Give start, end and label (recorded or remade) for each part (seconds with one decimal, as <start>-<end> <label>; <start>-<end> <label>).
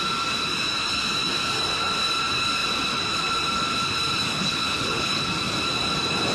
0.0-4.3 recorded; 4.3-5.2 remade; 5.2-6.3 recorded